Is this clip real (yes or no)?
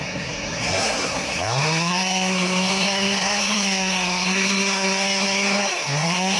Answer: no